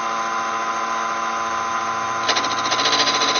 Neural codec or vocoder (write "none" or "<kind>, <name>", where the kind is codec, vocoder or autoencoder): none